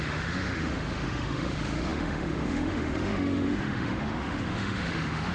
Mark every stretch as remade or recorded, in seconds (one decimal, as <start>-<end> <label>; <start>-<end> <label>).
0.0-5.3 remade